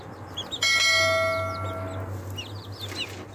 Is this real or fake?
real